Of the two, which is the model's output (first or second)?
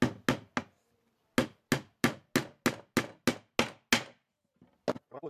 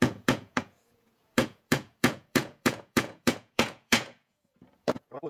second